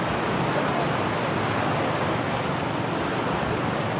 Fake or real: real